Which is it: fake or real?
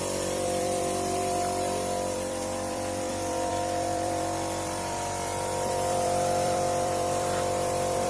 fake